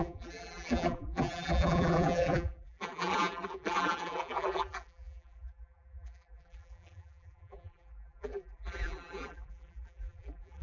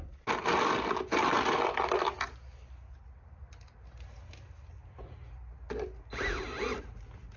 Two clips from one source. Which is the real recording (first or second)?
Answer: second